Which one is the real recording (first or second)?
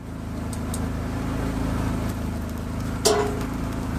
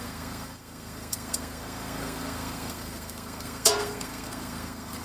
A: first